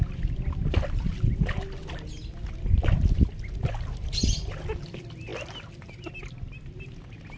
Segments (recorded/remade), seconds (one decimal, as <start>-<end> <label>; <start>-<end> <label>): 0.0-7.4 recorded